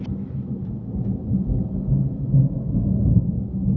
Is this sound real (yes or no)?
yes